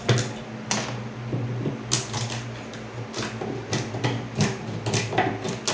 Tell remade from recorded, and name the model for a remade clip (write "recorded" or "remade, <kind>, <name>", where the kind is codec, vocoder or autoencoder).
recorded